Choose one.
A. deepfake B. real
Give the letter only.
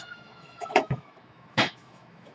A